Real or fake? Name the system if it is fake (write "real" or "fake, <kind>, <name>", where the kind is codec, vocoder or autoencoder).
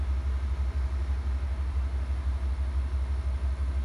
real